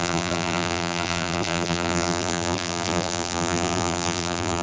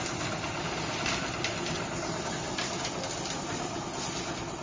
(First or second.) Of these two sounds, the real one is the second